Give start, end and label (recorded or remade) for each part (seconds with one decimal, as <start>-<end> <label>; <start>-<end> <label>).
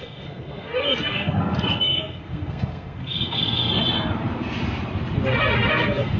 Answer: 0.0-3.8 remade; 3.8-5.7 recorded; 5.7-6.2 remade